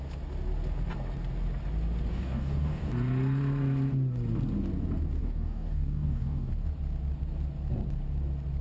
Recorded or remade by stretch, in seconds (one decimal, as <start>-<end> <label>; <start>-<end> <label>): 0.0-2.1 recorded; 2.1-2.9 remade; 2.9-5.2 recorded; 5.2-6.5 remade; 6.5-8.6 recorded